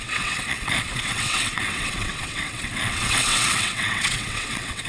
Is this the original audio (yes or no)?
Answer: no